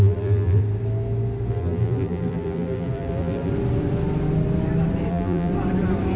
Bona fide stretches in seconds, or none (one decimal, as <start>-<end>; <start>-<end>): 0.6-1.5; 3.5-5.1; 5.5-6.2